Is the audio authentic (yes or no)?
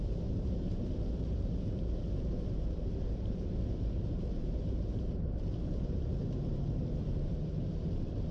no